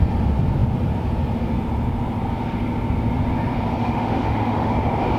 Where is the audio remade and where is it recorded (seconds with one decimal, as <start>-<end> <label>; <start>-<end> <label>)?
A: 0.0-3.8 recorded; 3.8-4.7 remade; 4.7-5.2 recorded